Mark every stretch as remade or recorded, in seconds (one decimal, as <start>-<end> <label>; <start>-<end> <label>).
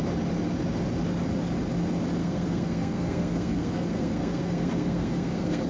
0.0-2.2 recorded; 2.2-5.7 remade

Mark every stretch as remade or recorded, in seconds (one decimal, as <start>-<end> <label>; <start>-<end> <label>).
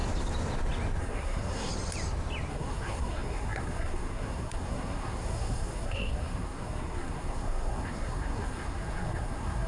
0.0-1.0 recorded; 1.0-1.7 remade; 1.7-2.5 recorded; 2.5-9.7 remade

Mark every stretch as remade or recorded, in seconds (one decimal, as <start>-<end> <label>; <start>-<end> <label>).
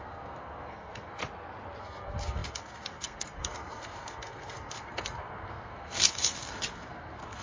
0.0-1.2 remade; 1.2-1.8 recorded; 1.8-7.4 remade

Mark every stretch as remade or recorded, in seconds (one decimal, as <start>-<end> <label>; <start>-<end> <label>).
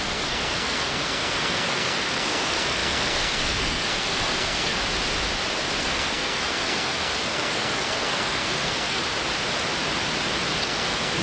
0.0-4.8 remade; 4.8-5.8 recorded; 5.8-9.0 remade; 9.0-10.6 recorded; 10.6-11.2 remade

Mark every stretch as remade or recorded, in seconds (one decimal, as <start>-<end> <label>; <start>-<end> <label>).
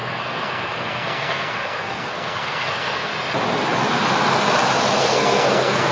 0.0-3.1 remade; 3.1-5.0 recorded; 5.0-5.9 remade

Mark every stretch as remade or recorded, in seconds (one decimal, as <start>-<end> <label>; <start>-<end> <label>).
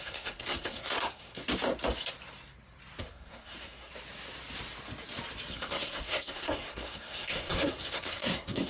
0.0-1.4 remade; 1.4-3.0 recorded; 3.0-3.9 remade; 3.9-5.5 recorded; 5.5-8.7 remade